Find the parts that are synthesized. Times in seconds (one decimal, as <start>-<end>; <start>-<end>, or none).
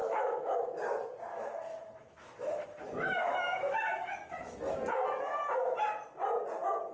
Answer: 0.0-0.6; 1.3-4.7